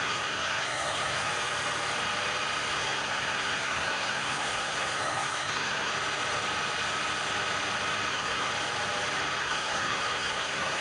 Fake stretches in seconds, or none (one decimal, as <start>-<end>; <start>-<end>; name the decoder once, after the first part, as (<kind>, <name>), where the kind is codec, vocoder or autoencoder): 0.0-1.3 (codec, SNAC); 2.7-5.9; 8.1-8.5; 9.4-10.8